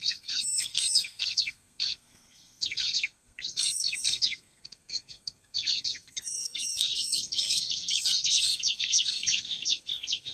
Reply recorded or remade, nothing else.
remade